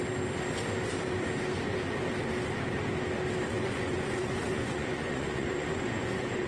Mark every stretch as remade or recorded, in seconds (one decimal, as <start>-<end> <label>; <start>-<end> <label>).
0.0-3.5 recorded; 3.5-6.5 remade